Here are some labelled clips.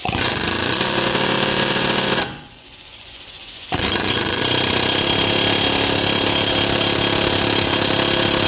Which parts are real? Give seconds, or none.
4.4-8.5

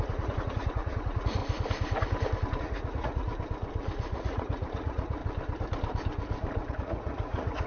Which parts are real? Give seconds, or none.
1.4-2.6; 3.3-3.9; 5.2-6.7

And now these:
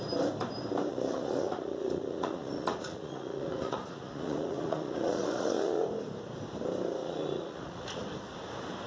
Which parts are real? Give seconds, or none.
0.0-0.9; 5.8-7.0; 8.0-8.9

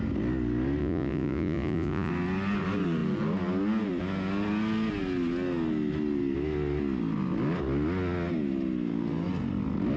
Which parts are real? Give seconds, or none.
0.0-0.8; 2.1-10.0